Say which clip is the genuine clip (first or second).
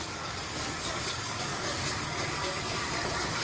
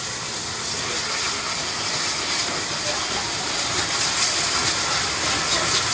second